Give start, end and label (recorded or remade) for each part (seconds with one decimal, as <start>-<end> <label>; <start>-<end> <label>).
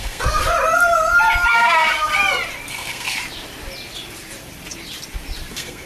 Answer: 0.0-0.4 remade; 0.4-1.5 recorded; 1.5-2.1 remade; 2.1-2.7 recorded; 2.7-3.2 remade; 3.2-5.5 recorded; 5.5-5.9 remade